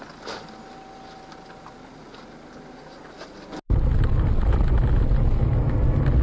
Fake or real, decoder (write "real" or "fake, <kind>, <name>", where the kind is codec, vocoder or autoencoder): real